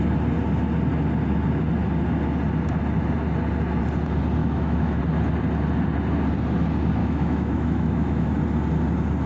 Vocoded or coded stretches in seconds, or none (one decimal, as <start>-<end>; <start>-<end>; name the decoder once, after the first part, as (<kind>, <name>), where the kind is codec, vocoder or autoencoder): 4.4-5.0 (autoencoder, DAC-VAE); 7.0-8.4